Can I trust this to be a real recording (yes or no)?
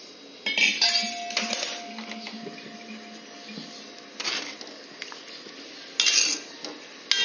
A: yes